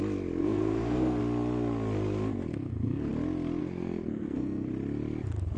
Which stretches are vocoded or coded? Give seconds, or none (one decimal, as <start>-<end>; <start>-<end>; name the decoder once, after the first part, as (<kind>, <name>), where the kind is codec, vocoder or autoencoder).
0.4-1.2 (codec, SNAC); 2.5-3.1; 3.6-4.7